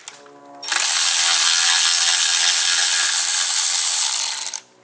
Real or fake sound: real